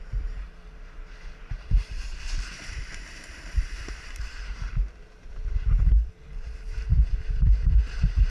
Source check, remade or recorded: remade